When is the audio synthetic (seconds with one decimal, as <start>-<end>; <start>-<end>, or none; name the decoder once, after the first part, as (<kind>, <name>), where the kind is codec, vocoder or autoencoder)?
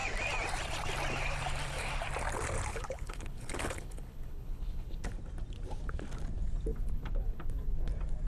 2.7-5.1 (codec, HILCodec); 6.7-7.9